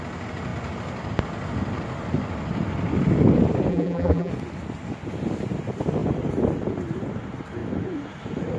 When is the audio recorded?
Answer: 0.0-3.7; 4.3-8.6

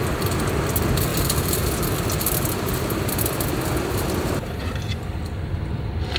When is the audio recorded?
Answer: 0.0-1.1; 4.6-6.2

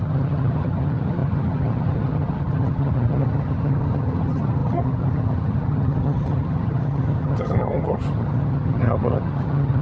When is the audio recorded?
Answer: none

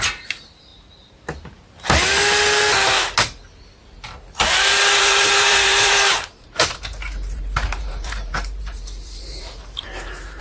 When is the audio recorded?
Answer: 0.7-5.0

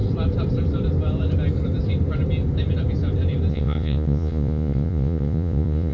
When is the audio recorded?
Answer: 0.0-3.5

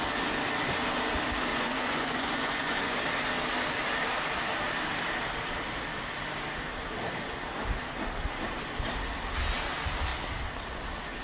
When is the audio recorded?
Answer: 0.0-1.5; 3.0-11.2